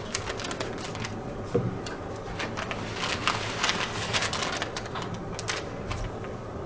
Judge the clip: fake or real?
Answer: real